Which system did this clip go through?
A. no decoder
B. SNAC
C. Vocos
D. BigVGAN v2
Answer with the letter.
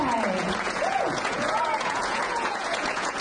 C